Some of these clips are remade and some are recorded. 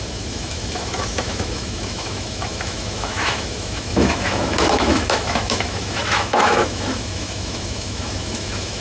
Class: remade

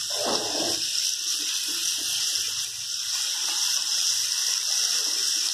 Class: recorded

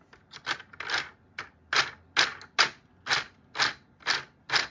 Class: recorded